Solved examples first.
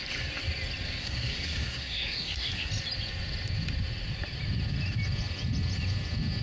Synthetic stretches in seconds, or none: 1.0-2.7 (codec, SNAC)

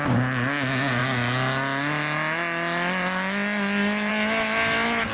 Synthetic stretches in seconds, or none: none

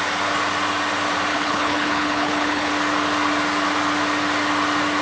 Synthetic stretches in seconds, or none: 1.3-2.7 (codec, HILCodec)